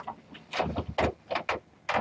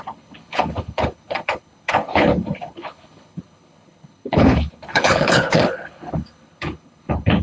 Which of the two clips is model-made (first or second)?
second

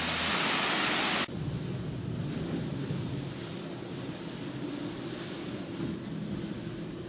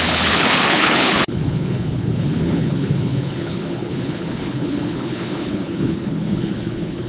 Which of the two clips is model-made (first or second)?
second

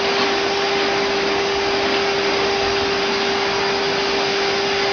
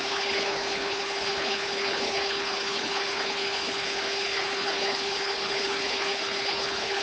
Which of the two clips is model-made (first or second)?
second